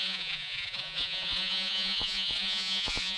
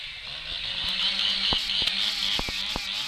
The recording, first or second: second